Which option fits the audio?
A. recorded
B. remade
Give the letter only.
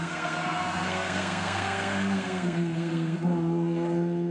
B